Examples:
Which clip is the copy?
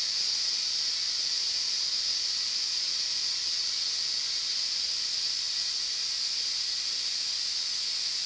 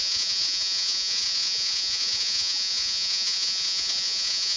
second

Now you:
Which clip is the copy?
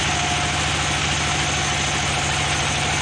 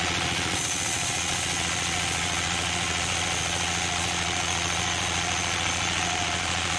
second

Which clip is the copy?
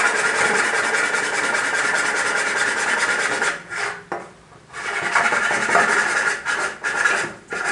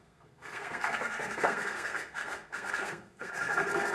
second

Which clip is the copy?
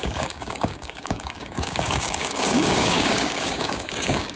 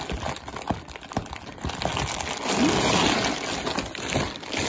first